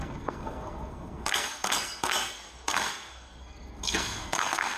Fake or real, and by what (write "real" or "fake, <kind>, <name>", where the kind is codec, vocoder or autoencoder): fake, codec, SNAC